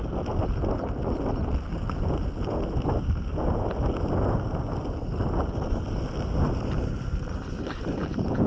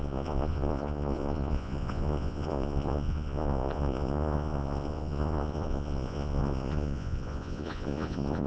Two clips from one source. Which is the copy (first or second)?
second